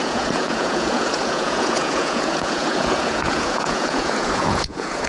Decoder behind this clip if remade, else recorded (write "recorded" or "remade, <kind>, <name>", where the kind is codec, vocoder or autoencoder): remade, vocoder, Vocos